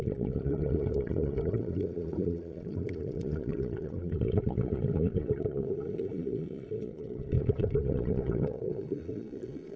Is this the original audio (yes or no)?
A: no